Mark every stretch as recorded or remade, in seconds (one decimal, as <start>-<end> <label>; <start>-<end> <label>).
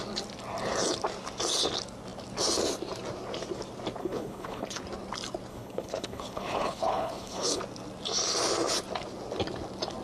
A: 0.0-4.0 recorded; 4.0-4.8 remade; 4.8-5.5 recorded; 5.5-7.6 remade; 7.6-10.0 recorded